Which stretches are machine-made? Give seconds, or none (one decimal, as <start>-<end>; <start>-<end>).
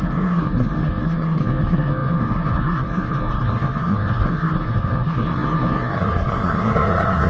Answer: 0.0-7.3